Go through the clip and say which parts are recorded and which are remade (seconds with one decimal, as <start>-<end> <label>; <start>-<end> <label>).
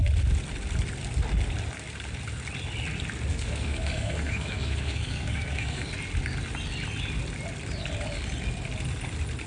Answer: 0.0-3.3 recorded; 3.3-5.9 remade; 5.9-9.5 recorded